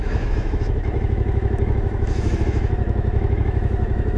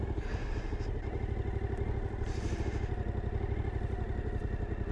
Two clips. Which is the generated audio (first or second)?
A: first